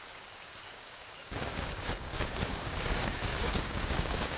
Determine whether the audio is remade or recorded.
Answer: remade